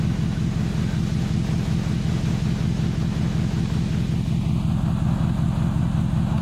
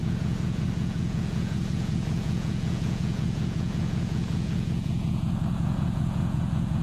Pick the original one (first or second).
first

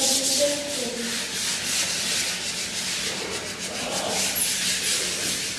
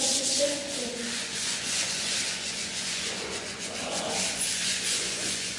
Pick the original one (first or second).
first